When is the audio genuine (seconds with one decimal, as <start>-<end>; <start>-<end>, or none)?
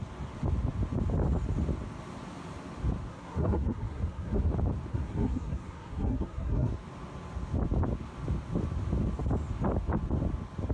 0.0-3.1; 4.5-4.9; 6.7-10.7